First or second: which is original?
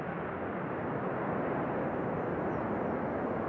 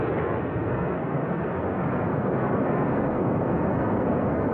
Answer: first